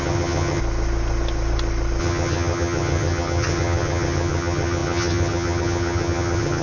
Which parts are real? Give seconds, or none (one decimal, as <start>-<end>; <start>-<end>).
0.6-2.0